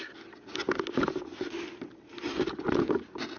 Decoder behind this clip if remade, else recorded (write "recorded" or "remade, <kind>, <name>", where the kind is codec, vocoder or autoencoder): recorded